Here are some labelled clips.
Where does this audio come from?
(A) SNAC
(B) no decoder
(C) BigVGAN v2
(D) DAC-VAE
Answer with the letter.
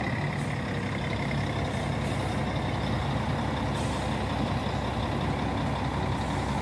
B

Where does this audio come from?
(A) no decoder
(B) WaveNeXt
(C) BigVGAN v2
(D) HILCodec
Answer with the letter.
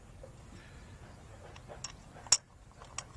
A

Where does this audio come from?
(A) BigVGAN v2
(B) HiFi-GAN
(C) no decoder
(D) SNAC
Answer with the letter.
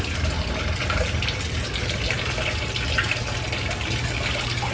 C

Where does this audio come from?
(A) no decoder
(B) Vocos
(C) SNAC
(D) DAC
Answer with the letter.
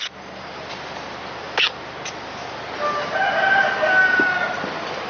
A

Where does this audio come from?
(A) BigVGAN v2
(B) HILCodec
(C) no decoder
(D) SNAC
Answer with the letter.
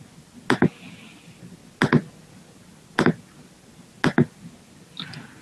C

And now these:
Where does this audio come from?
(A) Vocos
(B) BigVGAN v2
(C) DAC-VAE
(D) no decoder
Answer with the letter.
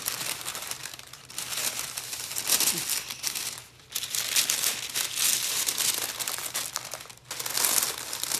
D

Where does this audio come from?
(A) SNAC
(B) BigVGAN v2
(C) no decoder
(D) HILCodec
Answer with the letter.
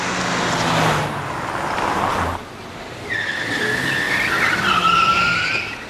C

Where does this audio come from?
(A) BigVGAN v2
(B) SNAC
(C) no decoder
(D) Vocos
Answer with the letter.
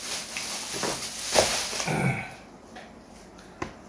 C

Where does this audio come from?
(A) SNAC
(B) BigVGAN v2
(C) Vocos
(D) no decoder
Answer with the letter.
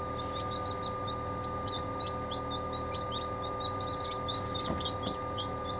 D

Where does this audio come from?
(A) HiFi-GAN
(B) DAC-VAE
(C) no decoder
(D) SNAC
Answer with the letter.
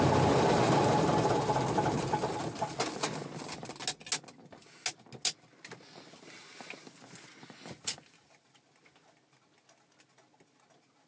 C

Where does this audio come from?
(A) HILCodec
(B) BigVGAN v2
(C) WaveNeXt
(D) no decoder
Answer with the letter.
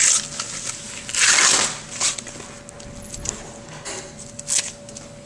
D